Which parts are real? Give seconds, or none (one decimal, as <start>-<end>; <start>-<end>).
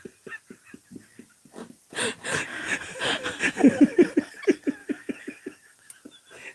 0.0-2.5; 3.8-4.8; 5.9-6.5